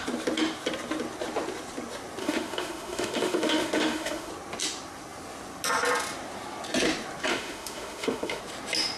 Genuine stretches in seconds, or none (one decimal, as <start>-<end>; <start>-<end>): 0.0-2.2; 4.3-7.3; 8.4-9.0